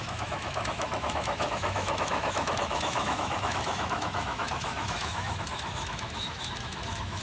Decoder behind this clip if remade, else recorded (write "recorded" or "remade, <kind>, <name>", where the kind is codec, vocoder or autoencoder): remade, autoencoder, DAC-VAE